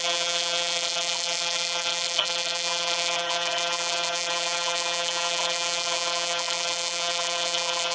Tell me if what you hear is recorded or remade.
remade